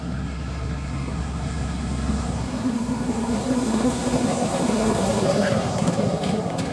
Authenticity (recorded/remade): remade